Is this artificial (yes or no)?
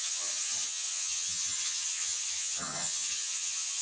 yes